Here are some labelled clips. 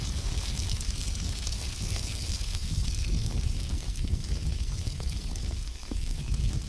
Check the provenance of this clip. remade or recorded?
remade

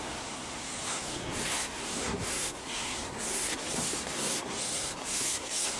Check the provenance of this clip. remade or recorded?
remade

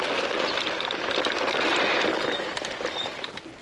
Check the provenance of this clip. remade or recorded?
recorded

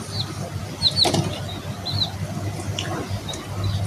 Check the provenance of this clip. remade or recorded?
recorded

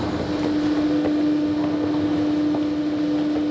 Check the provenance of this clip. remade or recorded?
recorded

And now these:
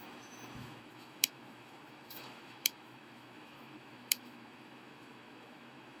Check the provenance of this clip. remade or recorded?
remade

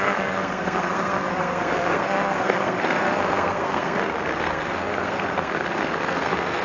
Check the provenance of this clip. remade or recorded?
remade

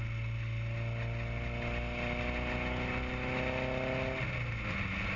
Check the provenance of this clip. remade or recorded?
recorded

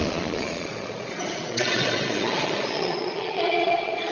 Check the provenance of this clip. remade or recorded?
remade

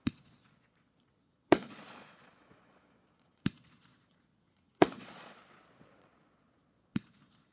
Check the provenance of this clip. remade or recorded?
remade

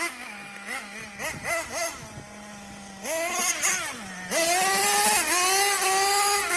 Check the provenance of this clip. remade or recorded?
recorded